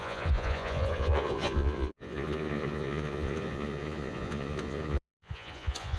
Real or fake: fake